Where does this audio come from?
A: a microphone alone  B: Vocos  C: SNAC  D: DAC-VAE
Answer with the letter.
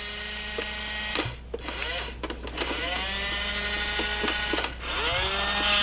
A